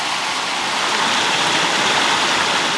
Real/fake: real